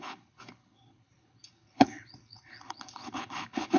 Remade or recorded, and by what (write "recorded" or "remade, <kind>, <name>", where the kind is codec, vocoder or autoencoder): remade, codec, HILCodec